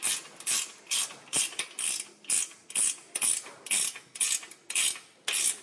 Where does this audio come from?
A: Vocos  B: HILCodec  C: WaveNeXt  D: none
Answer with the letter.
D